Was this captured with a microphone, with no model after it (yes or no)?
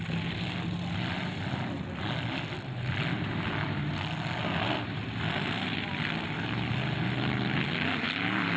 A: yes